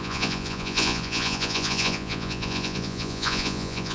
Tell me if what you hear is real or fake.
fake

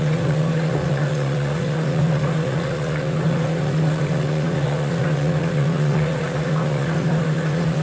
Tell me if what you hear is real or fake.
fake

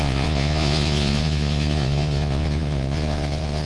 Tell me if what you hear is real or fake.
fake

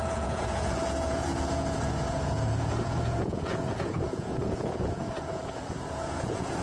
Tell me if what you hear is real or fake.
fake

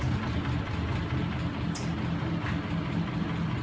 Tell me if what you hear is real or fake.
real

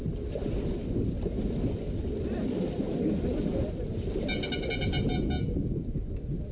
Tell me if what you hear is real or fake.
real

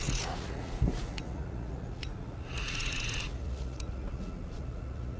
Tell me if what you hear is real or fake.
fake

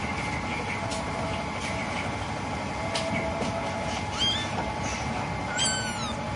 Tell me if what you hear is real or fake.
real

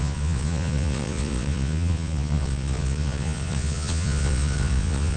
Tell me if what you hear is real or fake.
fake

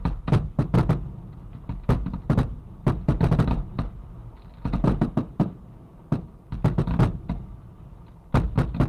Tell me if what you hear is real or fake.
real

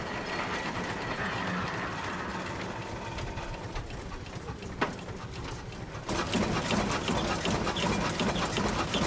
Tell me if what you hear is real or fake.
real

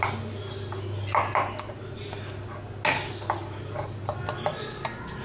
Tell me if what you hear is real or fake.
real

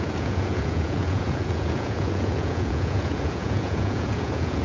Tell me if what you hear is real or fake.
fake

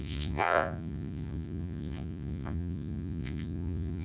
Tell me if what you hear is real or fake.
fake